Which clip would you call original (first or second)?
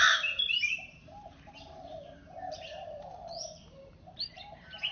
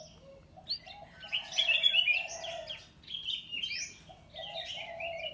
second